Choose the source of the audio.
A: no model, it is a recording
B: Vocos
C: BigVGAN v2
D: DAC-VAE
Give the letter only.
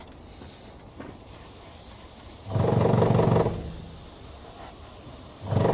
A